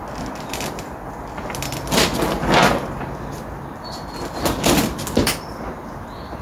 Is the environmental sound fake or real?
real